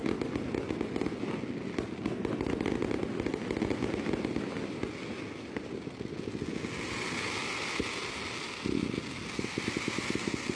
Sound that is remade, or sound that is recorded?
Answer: recorded